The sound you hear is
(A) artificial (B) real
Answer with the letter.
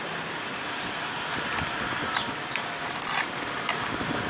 B